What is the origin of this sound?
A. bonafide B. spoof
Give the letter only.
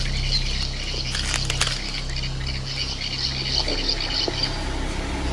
A